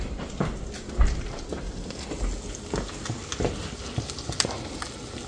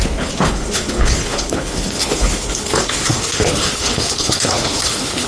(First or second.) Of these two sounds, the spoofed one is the second